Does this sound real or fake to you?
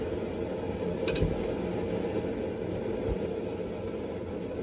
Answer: real